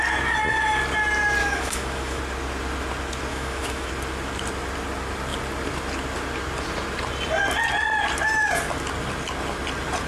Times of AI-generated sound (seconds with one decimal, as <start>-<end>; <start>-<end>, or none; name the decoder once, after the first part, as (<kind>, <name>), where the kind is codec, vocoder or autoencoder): 1.4-2.2 (autoencoder, DAC-VAE); 3.3-3.9